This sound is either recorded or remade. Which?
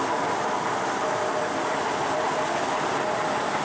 remade